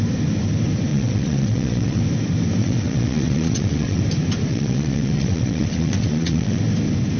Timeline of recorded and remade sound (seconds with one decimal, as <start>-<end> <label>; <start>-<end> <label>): 0.0-0.9 recorded; 0.9-2.0 remade; 2.0-2.6 recorded; 2.6-4.0 remade; 4.0-4.5 recorded; 4.5-6.6 remade; 6.6-7.2 recorded